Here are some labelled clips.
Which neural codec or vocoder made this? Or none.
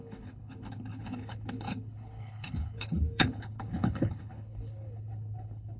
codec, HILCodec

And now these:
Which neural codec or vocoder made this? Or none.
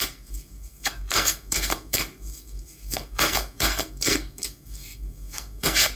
codec, SNAC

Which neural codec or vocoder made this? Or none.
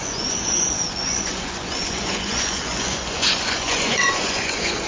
vocoder, Vocos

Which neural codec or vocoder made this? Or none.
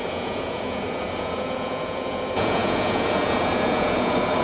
vocoder, Vocos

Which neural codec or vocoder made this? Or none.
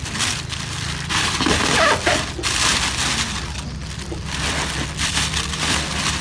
none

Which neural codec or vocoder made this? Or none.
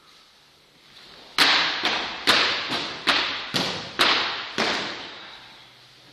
none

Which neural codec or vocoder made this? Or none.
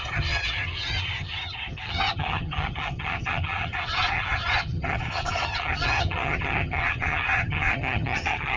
vocoder, HiFi-GAN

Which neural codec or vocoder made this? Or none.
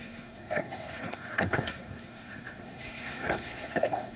codec, SNAC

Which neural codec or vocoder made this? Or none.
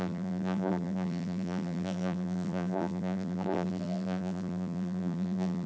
vocoder, BigVGAN v2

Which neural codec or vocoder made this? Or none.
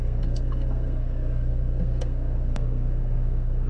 codec, SNAC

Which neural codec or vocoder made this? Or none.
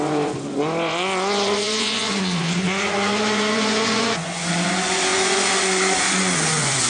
vocoder, Vocos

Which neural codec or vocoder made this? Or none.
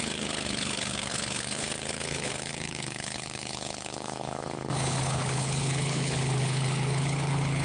codec, HILCodec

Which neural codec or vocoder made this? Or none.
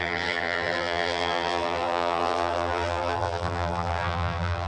vocoder, BigVGAN v2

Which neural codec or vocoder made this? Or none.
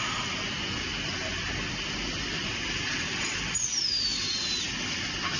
none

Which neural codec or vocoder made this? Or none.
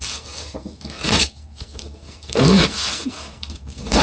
codec, SNAC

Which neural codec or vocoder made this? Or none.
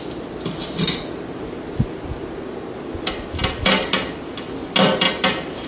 none